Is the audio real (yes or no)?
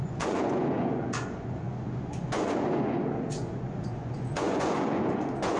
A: no